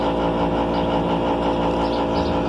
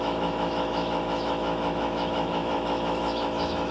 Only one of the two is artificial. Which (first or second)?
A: second